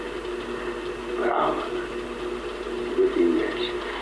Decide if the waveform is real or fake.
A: real